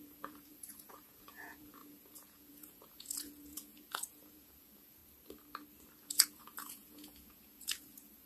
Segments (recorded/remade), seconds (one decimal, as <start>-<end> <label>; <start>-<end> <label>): 0.0-5.0 remade; 5.0-6.0 recorded; 6.0-8.3 remade